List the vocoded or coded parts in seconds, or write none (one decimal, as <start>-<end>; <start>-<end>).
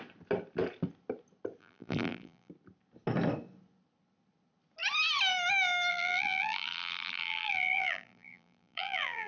1.6-2.5; 5.9-9.3